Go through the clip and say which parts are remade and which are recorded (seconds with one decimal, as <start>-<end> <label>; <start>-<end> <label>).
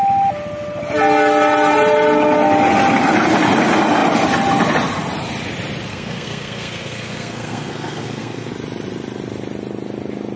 0.0-5.9 recorded; 5.9-8.5 remade; 8.5-10.4 recorded